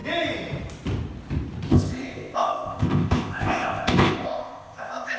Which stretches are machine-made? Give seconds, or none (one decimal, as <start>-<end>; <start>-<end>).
1.7-5.2